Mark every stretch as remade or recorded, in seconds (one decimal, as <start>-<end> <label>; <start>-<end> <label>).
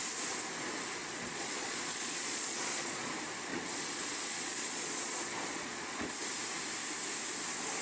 0.0-1.0 recorded; 1.0-3.1 remade; 3.1-3.5 recorded; 3.5-6.0 remade; 6.0-7.8 recorded